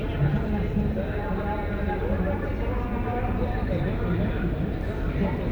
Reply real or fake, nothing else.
real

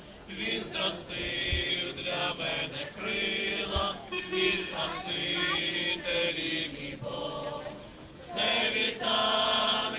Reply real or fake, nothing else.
fake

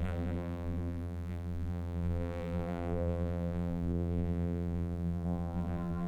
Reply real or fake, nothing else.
fake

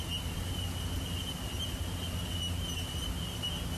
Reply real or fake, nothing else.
real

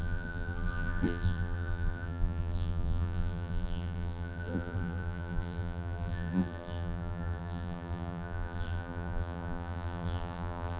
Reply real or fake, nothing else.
fake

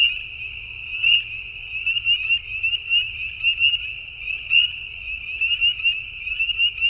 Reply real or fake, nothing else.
real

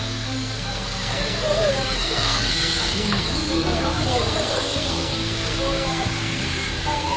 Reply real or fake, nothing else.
fake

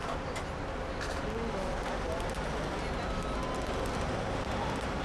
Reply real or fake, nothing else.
real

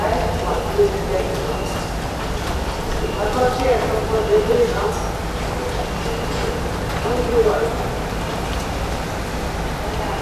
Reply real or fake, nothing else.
real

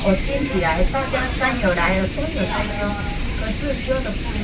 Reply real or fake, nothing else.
fake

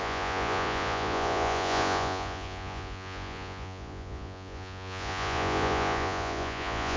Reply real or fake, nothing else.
fake